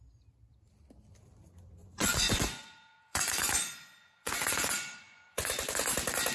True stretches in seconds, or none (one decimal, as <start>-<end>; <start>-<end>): 0.0-1.8; 5.5-6.3